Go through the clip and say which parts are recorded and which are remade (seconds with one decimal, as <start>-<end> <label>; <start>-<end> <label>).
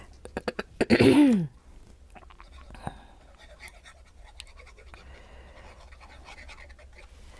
0.0-7.4 recorded